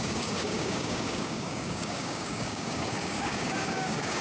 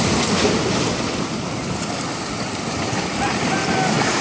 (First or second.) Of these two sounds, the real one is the second